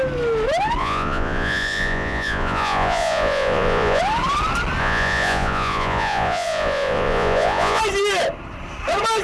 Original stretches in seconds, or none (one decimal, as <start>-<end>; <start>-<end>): 0.0-0.8; 4.0-4.8; 7.8-9.2